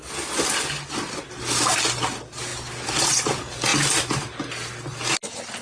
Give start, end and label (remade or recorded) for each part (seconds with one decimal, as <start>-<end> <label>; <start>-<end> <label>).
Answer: 0.0-5.6 recorded